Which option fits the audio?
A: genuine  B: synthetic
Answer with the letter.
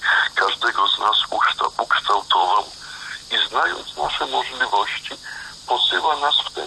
A